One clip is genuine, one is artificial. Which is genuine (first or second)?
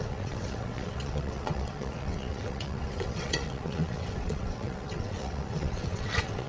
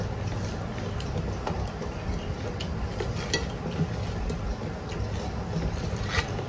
second